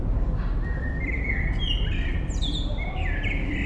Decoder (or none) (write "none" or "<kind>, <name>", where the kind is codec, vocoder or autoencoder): vocoder, BigVGAN v2